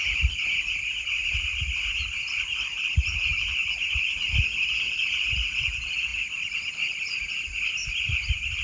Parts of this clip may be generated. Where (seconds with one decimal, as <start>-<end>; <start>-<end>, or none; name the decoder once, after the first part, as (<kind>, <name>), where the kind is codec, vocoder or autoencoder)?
none